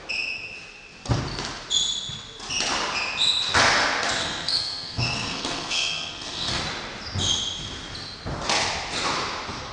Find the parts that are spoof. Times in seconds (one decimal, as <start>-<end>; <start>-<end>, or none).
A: 4.2-6.6

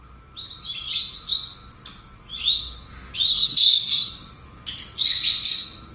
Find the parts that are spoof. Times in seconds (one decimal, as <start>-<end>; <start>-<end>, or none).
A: 3.3-4.1

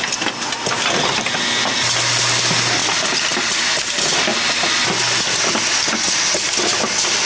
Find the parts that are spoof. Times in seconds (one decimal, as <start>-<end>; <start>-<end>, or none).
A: 2.8-3.9

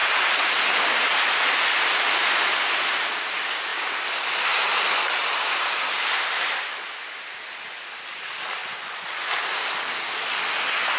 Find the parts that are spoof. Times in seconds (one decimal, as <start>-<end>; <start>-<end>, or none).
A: 8.6-9.2

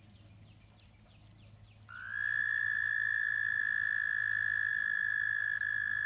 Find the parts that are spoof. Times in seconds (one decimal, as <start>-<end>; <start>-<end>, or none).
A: 2.4-3.6; 4.7-6.1

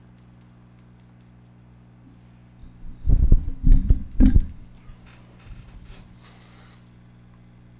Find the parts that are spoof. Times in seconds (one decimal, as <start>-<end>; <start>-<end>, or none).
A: none

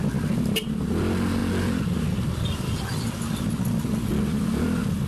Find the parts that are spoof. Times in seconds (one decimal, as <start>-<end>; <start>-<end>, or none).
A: none

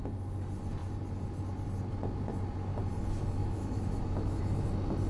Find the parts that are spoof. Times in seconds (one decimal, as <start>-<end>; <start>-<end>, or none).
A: 3.4-4.4